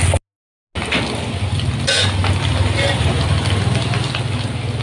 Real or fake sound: real